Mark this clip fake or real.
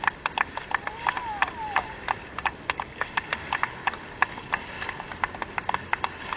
real